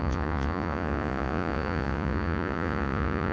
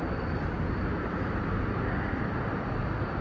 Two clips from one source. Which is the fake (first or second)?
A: first